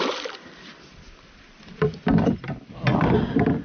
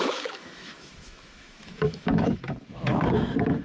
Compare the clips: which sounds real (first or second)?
first